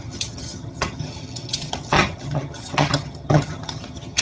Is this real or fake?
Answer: fake